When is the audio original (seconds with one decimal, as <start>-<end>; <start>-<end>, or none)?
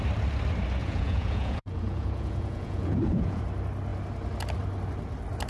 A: 0.0-0.8; 3.4-5.5